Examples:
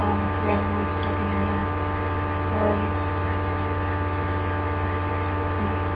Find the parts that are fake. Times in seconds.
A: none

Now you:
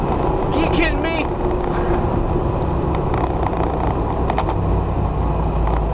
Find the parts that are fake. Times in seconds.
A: none